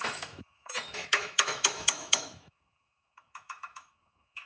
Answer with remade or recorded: remade